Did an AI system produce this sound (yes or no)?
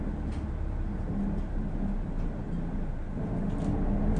no